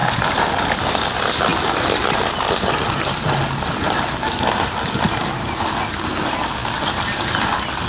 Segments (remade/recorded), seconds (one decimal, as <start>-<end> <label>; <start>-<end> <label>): 0.0-7.9 recorded